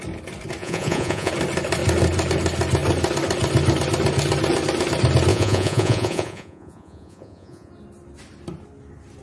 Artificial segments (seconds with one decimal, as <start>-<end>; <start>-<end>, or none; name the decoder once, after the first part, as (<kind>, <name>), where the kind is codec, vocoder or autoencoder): 0.6-1.3 (vocoder, Vocos); 5.3-7.7